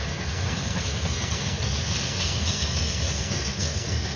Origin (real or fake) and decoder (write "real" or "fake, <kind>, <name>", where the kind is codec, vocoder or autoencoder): fake, codec, SNAC